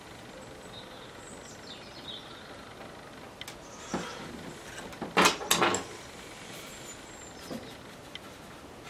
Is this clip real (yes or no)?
yes